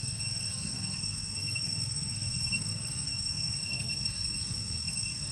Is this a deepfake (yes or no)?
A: yes